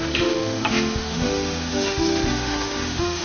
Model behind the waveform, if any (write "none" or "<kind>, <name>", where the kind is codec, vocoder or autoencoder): autoencoder, DAC-VAE